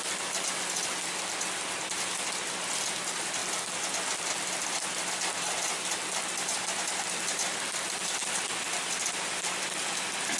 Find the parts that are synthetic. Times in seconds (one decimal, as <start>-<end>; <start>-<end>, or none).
none

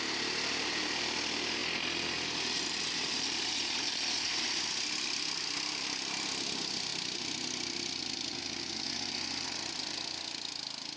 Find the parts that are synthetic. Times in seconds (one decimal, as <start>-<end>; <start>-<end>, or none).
none

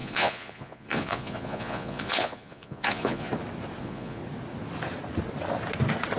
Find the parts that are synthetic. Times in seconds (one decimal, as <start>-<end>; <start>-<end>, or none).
0.0-3.3; 3.8-4.2

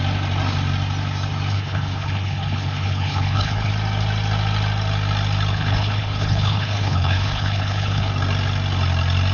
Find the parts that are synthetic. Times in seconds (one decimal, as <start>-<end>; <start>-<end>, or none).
1.5-3.7; 5.5-8.1

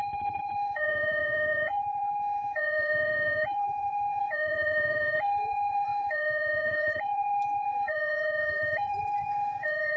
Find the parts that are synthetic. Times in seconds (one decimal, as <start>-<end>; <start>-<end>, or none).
0.0-10.0